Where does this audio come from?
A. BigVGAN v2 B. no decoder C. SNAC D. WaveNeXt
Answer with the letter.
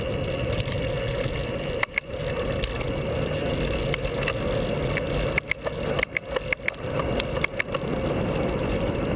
B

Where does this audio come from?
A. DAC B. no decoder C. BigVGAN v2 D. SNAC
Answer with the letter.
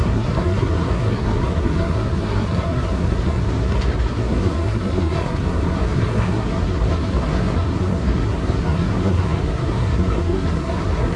D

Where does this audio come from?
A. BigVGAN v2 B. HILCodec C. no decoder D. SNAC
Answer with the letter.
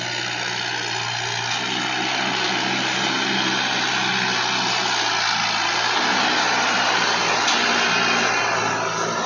C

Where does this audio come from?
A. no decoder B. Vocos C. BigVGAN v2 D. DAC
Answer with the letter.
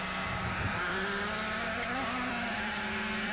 C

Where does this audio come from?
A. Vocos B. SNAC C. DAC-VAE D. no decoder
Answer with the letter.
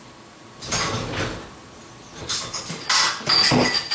D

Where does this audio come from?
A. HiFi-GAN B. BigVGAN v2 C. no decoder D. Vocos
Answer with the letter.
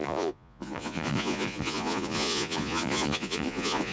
D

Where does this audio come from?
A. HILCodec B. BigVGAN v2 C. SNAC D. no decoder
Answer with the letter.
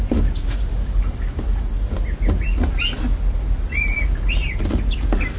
D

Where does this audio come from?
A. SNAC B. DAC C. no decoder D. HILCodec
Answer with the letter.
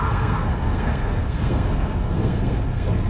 A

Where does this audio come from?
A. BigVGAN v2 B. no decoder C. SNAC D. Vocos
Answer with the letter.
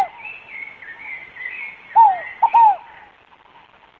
B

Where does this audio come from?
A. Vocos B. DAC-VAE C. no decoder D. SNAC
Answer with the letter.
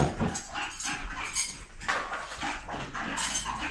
A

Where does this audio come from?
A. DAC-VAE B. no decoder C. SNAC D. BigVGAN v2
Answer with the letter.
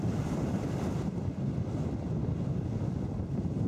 B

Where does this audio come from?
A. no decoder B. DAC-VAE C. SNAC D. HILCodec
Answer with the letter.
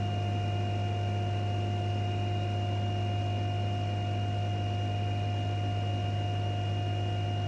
A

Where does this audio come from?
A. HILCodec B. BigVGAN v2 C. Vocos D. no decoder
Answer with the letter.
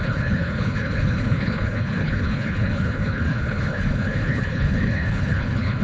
A